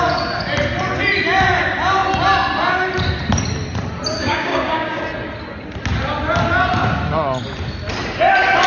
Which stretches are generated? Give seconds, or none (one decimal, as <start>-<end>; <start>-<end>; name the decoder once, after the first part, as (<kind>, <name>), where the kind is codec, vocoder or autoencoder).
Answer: 4.2-5.0 (codec, DAC)